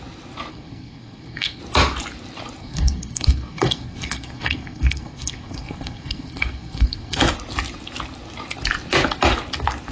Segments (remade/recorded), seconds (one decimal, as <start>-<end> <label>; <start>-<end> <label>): 0.0-0.5 recorded; 0.5-1.6 remade; 1.6-2.6 recorded; 2.6-7.2 remade; 7.2-9.9 recorded

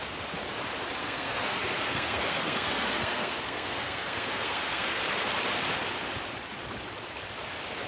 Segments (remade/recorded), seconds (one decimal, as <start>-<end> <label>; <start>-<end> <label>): 0.0-1.0 recorded; 1.0-5.0 remade; 5.0-7.9 recorded